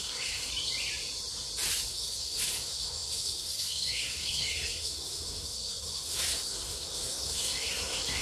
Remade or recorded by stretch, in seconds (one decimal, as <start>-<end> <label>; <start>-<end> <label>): 0.0-0.5 remade; 0.5-1.9 recorded; 1.9-8.2 remade